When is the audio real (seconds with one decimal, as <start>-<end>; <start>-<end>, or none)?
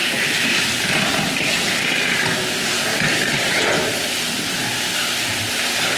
0.0-2.9; 3.5-4.6